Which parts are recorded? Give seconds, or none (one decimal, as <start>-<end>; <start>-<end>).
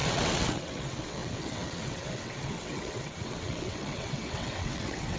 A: none